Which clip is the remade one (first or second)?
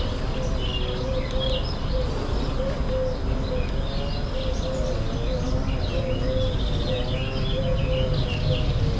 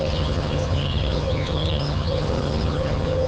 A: second